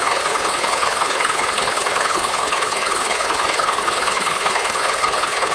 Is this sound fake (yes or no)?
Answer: yes